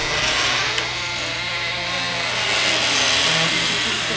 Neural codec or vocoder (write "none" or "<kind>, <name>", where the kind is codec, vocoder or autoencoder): none